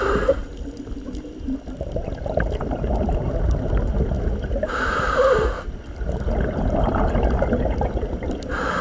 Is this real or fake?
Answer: real